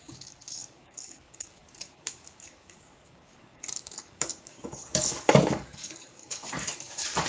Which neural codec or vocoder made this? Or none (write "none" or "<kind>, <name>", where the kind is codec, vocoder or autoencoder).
codec, DAC